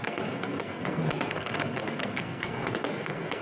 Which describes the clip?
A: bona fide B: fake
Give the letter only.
B